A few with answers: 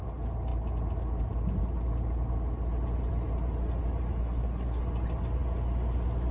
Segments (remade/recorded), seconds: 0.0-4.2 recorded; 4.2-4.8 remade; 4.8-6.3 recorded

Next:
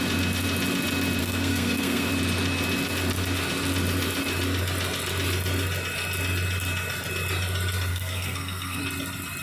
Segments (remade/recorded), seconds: 0.0-1.2 recorded; 1.2-2.1 remade; 2.1-7.9 recorded; 7.9-8.8 remade; 8.8-9.4 recorded

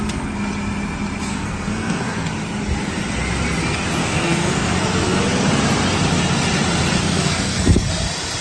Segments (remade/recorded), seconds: 0.0-1.3 recorded; 1.3-2.3 remade; 2.3-4.0 recorded; 4.0-5.2 remade; 5.2-7.0 recorded; 7.0-7.9 remade; 7.9-8.4 recorded

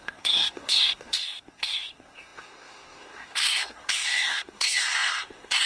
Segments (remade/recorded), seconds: 0.0-5.7 remade

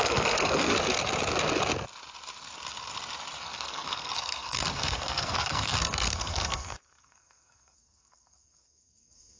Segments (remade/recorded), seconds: 0.0-0.7 remade; 0.7-3.4 recorded; 3.4-9.4 remade

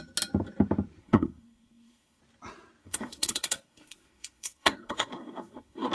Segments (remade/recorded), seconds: 0.0-1.0 recorded; 1.0-2.2 remade; 2.2-2.8 recorded; 2.8-5.9 remade